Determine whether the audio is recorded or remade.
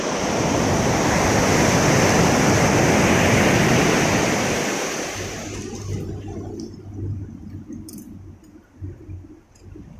recorded